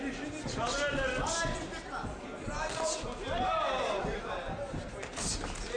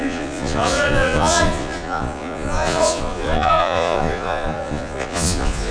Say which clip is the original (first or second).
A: first